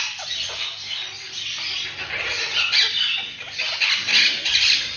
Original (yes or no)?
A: yes